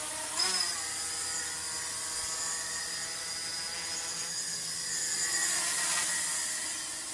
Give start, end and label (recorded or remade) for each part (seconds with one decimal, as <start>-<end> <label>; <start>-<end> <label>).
0.0-7.1 recorded